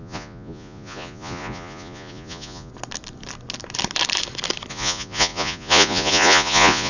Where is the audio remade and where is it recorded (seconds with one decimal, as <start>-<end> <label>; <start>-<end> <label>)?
0.0-2.7 remade; 2.7-4.7 recorded; 4.7-6.9 remade